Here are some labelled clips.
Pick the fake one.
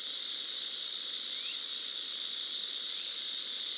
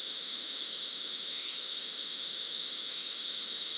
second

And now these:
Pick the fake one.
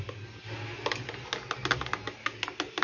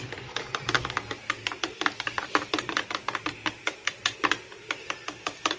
second